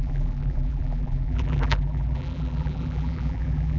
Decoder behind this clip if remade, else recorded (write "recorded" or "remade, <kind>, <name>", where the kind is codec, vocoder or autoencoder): remade, vocoder, BigVGAN v2